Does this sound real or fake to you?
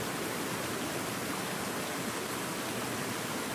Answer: real